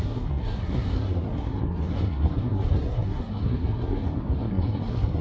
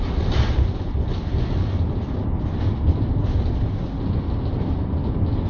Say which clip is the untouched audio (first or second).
second